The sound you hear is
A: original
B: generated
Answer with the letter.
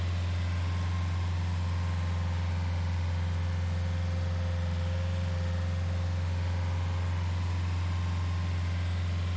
A